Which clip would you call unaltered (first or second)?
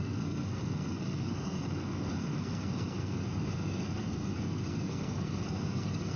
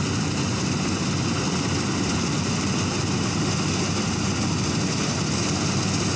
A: second